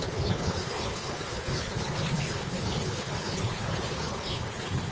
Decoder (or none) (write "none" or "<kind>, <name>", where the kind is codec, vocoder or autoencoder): codec, HILCodec